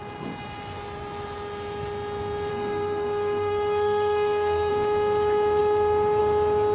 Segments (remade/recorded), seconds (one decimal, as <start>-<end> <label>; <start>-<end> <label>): 0.0-2.5 recorded; 2.5-4.7 remade; 4.7-6.7 recorded